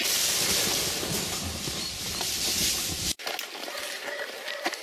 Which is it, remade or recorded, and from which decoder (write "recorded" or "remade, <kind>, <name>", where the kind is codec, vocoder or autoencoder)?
recorded